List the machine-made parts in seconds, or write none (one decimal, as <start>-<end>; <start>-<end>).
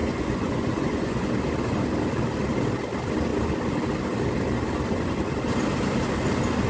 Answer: 0.0-1.3